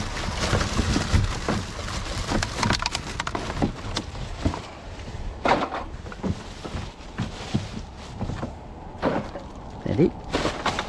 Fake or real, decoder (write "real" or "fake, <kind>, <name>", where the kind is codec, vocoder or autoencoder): real